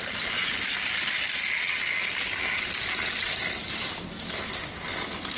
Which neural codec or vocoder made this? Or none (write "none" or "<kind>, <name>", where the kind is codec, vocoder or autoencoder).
none